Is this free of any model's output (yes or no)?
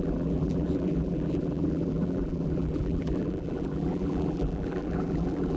no